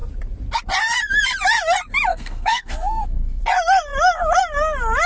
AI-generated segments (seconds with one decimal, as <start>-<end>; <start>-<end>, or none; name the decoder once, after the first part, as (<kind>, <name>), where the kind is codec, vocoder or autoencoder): 2.1-3.4 (codec, SNAC)